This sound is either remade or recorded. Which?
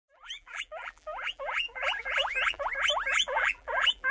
remade